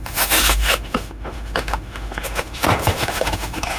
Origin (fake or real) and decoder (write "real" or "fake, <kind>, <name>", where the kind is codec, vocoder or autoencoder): fake, autoencoder, DAC-VAE